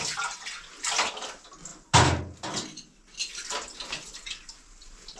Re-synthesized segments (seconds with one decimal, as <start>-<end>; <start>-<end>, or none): none